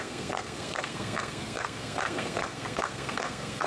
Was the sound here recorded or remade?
remade